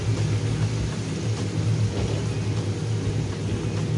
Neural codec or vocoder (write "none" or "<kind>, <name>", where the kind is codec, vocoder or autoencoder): none